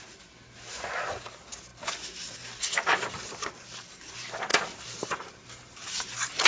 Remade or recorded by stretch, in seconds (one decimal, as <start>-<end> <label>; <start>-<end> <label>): 0.0-4.5 recorded; 4.5-6.5 remade